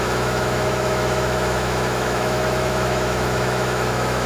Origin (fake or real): fake